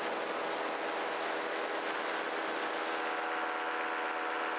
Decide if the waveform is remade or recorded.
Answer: recorded